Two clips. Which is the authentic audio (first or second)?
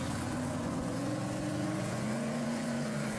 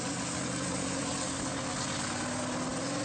second